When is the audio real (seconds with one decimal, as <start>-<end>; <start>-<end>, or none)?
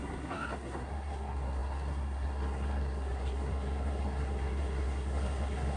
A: none